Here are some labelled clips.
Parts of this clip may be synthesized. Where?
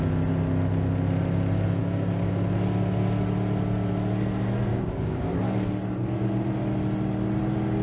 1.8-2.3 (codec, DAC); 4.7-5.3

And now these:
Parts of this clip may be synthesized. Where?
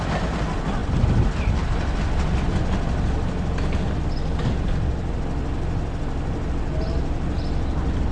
none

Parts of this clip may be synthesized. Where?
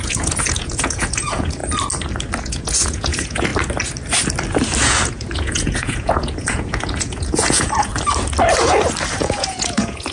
0.0-1.6 (vocoder, Vocos); 2.4-3.5; 4.8-7.9; 9.1-10.1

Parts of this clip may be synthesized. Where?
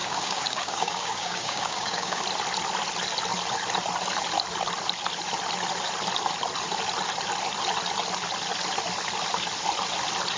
0.0-2.2 (codec, DAC)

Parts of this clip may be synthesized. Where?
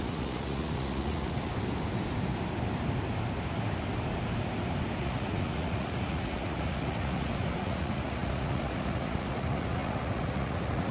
0.0-1.5 (vocoder, Vocos); 5.0-10.9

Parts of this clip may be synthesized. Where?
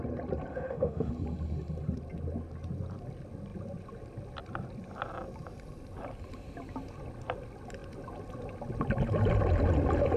0.5-1.1 (autoencoder, DAC-VAE)